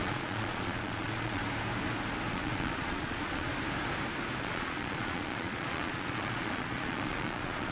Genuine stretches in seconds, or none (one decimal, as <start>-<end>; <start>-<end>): 1.4-2.3; 3.5-4.4

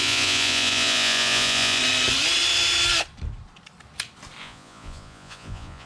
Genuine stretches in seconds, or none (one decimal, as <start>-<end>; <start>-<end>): 1.8-4.4

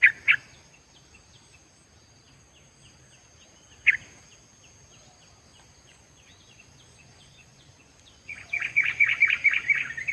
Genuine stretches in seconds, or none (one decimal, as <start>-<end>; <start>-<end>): 0.0-5.5; 9.2-10.1

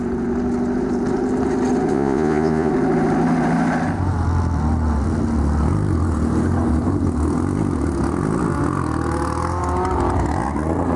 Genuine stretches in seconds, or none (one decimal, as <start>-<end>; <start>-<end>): 0.0-1.9; 2.7-11.0

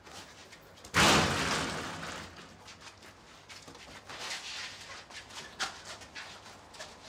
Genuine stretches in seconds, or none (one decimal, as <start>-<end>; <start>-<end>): 0.0-7.1

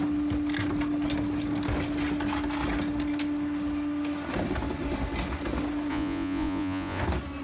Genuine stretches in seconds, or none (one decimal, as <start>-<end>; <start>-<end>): 0.0-5.9; 7.0-7.4

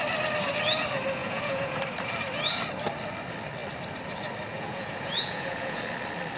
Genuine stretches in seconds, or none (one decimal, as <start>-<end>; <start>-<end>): 0.0-1.2; 1.8-4.5; 5.8-6.4

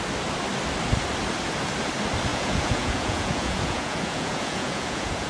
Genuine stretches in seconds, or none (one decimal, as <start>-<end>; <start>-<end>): 0.0-2.3